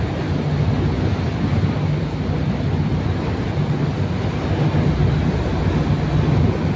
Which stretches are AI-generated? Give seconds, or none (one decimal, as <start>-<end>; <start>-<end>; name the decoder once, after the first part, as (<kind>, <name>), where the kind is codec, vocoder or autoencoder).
none